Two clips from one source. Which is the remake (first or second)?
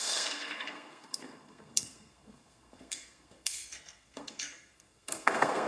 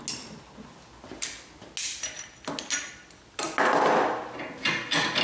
first